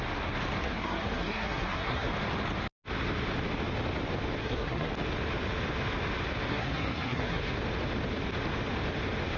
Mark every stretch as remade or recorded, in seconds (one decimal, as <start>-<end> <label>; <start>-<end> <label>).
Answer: 0.0-0.6 recorded; 0.6-2.1 remade; 2.1-4.4 recorded; 4.4-4.9 remade; 4.9-6.5 recorded; 6.5-7.4 remade; 7.4-9.4 recorded